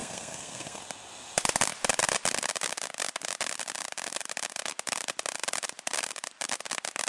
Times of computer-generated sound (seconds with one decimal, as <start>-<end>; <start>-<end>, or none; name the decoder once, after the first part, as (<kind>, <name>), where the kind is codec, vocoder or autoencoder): 0.0-0.8 (codec, SNAC)